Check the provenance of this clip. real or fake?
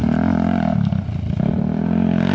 real